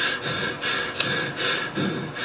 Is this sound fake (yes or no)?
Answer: no